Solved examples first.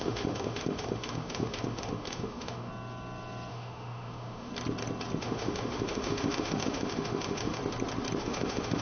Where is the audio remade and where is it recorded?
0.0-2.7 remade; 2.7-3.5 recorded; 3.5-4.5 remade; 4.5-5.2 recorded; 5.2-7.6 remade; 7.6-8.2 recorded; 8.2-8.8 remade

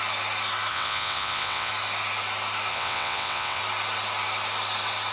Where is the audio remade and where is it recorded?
0.0-0.7 recorded; 0.7-1.7 remade; 1.7-2.7 recorded; 2.7-3.6 remade; 3.6-5.1 recorded

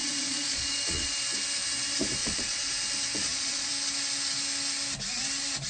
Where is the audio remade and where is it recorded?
0.0-1.1 remade; 1.1-2.2 recorded; 2.2-2.7 remade; 2.7-3.2 recorded; 3.2-3.7 remade; 3.7-5.7 recorded

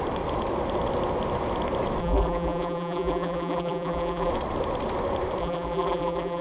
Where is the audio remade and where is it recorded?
0.0-2.0 recorded; 2.0-4.3 remade; 4.3-5.4 recorded; 5.4-6.4 remade